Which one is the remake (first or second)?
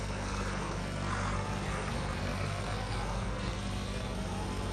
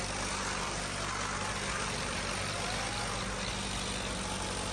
first